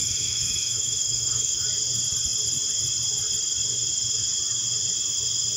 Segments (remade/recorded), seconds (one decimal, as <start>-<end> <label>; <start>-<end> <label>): 0.0-1.6 remade; 1.6-5.6 recorded